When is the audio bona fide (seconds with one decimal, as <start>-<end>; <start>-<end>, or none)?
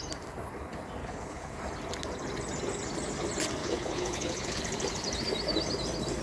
0.0-1.0; 1.6-3.6; 4.6-6.2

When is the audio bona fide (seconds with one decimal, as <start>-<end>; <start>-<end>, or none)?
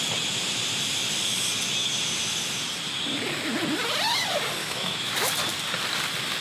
0.0-4.6; 5.1-6.4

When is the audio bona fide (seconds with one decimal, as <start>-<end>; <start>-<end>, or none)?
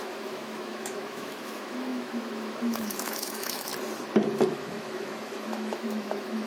3.7-4.5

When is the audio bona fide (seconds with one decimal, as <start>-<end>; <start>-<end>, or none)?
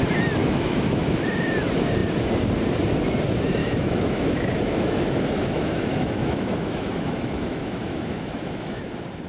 0.0-0.4; 1.1-3.6; 8.8-9.3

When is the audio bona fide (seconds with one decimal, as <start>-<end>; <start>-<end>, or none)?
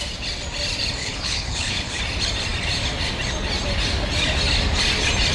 0.0-1.0; 2.0-5.3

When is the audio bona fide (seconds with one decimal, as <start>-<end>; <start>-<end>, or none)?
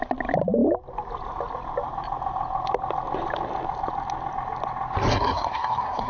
0.0-5.1